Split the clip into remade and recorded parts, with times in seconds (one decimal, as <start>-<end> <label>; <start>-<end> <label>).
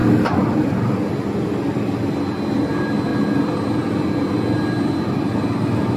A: 0.0-3.1 recorded; 3.1-3.6 remade; 3.6-6.0 recorded